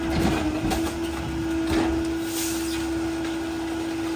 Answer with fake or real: real